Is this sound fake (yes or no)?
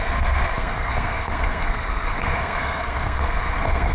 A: yes